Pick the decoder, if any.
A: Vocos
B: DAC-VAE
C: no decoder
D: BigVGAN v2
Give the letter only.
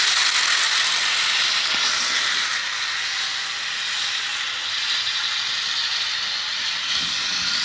C